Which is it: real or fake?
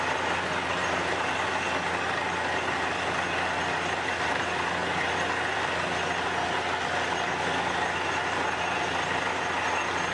real